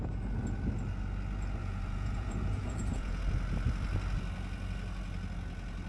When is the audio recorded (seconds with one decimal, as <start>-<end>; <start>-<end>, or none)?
0.0-1.6; 3.2-5.9

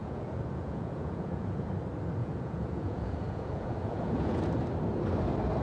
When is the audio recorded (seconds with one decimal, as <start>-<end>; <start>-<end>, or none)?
1.7-2.2; 4.4-5.6

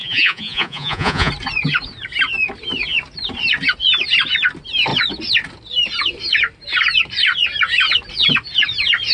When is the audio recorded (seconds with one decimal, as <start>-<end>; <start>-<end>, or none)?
1.3-9.1

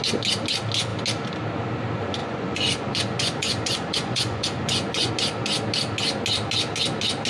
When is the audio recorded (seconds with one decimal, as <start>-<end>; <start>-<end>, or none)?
0.0-2.2; 5.1-7.3